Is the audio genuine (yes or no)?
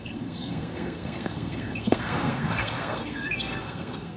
no